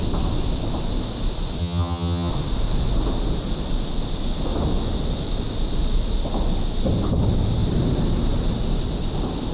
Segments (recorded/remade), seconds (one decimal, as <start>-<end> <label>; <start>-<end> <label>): 0.0-1.6 recorded; 1.6-2.3 remade; 2.3-9.5 recorded